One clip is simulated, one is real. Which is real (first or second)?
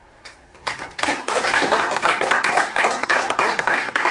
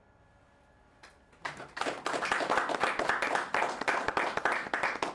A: second